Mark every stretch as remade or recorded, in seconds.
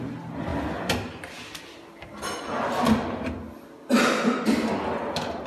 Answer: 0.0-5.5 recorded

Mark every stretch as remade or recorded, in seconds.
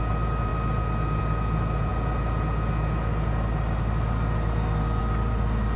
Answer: 0.0-5.8 recorded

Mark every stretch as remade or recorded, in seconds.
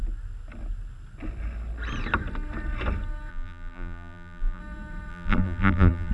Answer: 0.0-3.3 recorded; 3.3-4.6 remade; 4.6-5.1 recorded; 5.1-6.1 remade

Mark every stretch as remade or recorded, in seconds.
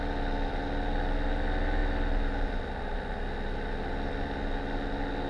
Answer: 0.0-5.3 recorded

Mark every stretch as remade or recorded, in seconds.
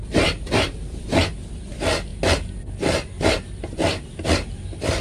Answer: 0.0-1.1 remade; 1.1-5.0 recorded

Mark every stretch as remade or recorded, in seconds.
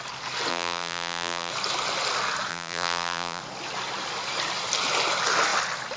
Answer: 0.0-0.5 recorded; 0.5-1.5 remade; 1.5-2.5 recorded; 2.5-3.4 remade; 3.4-6.0 recorded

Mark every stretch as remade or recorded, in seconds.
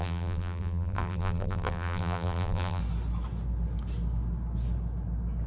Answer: 0.0-2.8 remade; 2.8-5.5 recorded